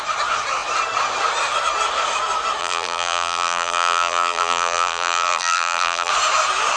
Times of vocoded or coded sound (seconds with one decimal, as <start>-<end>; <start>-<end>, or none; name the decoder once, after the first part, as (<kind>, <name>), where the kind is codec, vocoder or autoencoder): 2.6-6.1 (vocoder, BigVGAN v2)